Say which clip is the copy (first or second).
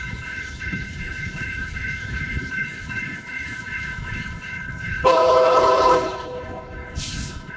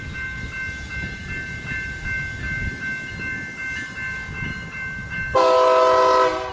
first